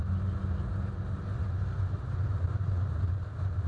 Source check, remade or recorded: recorded